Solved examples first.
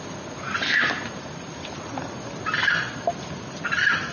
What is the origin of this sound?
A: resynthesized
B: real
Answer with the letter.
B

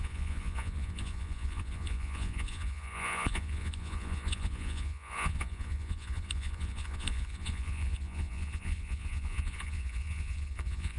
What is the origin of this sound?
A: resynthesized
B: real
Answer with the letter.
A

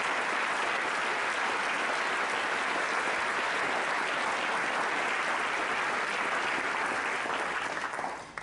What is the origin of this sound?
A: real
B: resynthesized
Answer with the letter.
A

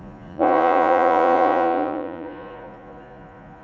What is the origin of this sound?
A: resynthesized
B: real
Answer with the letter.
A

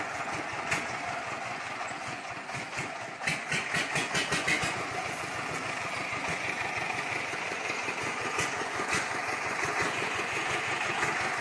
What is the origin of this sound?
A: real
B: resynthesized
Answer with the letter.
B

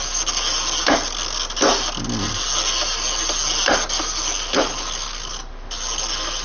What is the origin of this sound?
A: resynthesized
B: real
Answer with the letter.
B